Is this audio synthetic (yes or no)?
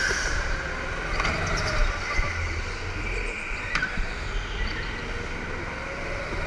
no